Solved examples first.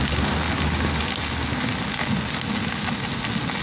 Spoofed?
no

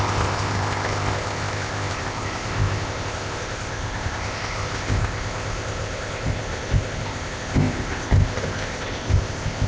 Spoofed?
yes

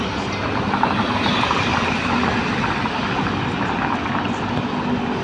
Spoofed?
no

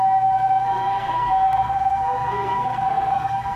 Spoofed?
yes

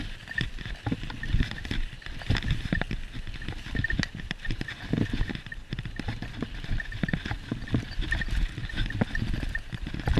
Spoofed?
no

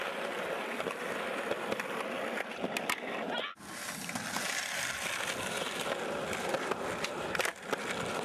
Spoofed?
no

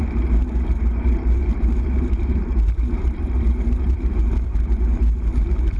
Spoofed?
yes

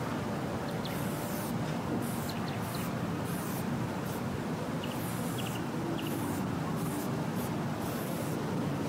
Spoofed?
no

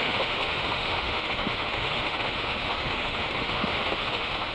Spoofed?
yes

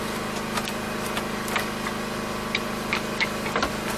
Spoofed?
no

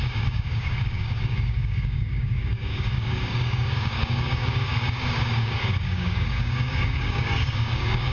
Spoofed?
yes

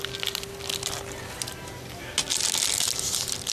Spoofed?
no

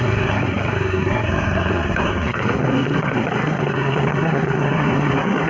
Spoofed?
yes